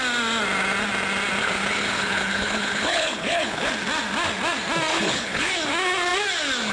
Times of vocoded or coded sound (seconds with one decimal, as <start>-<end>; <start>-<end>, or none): 1.4-3.7; 4.9-5.5